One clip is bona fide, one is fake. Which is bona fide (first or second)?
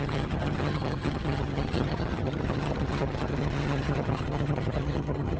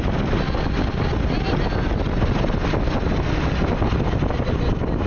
second